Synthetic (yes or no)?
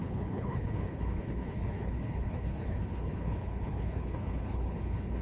yes